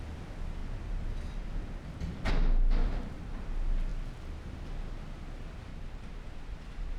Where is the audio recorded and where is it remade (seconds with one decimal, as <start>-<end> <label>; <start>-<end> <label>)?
0.0-2.8 recorded; 2.8-3.4 remade; 3.4-5.7 recorded; 5.7-7.0 remade